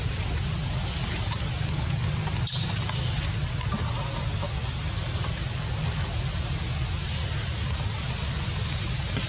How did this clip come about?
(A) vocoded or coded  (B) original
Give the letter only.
B